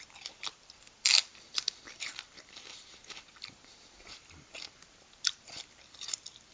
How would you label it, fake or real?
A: fake